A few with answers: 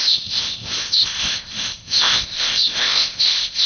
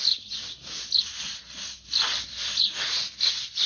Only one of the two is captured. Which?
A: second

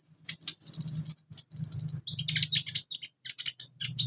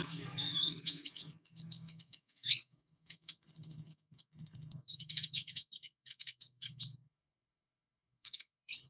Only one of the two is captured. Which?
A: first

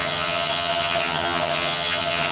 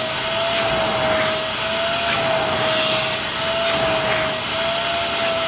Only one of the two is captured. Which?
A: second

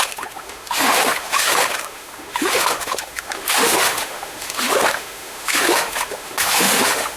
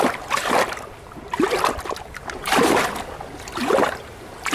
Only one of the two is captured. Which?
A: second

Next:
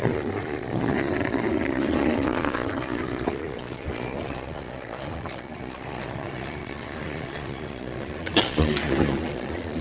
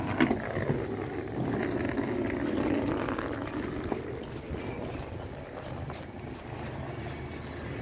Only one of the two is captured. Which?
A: second